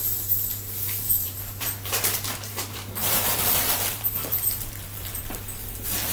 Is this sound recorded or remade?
remade